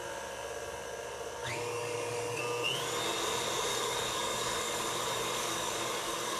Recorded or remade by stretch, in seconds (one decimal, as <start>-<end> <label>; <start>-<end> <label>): 0.0-1.4 recorded; 1.4-2.4 remade; 2.4-3.7 recorded; 3.7-6.4 remade